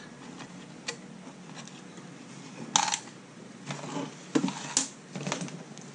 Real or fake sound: real